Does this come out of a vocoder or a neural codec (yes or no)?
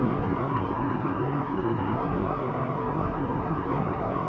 yes